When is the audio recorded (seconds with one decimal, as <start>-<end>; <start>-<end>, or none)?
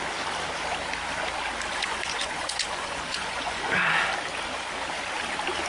0.0-1.7; 3.7-5.7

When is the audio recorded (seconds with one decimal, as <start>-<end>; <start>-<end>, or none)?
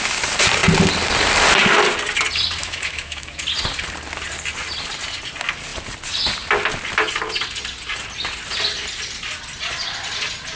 0.0-2.6; 3.4-10.6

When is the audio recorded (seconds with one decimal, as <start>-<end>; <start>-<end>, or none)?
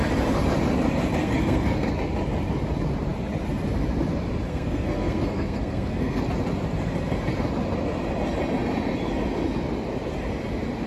0.0-1.2; 1.9-4.5; 6.2-10.9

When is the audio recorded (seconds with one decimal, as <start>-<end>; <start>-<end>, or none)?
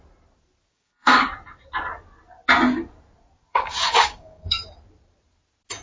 0.0-0.7; 1.3-3.5; 4.7-5.8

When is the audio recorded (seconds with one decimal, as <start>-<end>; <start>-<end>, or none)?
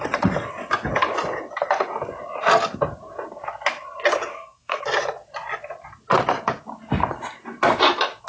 0.0-4.3; 4.8-8.3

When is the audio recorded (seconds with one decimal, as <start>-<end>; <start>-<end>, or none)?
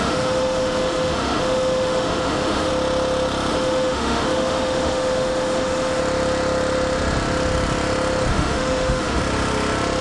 2.7-3.5; 6.0-8.3; 9.2-10.0